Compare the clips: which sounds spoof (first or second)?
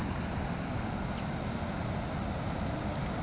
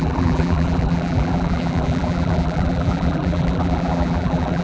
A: second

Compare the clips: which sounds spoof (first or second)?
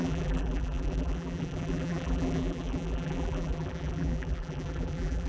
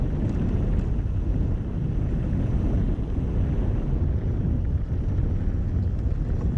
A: first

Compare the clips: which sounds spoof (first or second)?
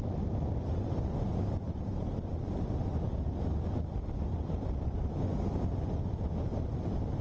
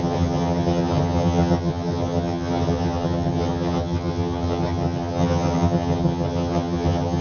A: second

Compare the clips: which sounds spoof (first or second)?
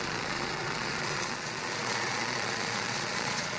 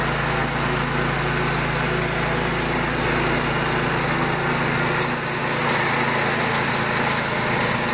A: first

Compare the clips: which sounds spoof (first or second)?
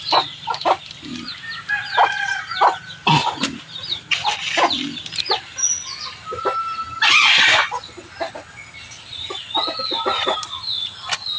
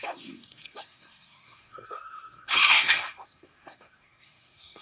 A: second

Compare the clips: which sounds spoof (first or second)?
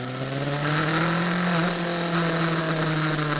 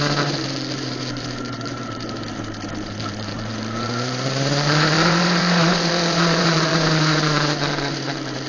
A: second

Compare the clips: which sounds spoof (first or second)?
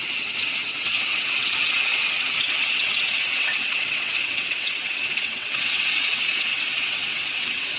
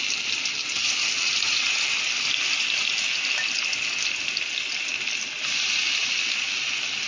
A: first